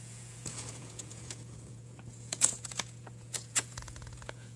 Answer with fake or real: fake